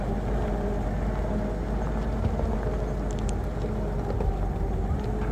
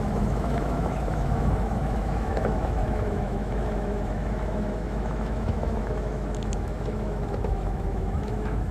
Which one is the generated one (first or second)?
second